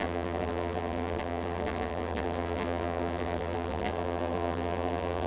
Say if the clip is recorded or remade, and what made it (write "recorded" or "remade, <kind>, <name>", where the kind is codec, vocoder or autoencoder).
remade, vocoder, BigVGAN v2